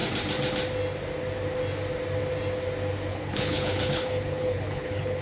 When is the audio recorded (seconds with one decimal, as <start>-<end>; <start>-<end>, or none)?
0.0-3.1